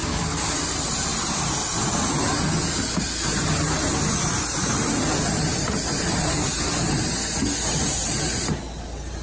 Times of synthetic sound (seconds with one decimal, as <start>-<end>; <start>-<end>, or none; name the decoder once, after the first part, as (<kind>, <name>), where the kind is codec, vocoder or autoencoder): 0.5-1.1 (vocoder, BigVGAN v2); 4.2-9.2